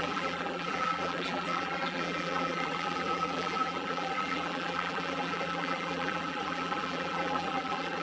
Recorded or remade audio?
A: remade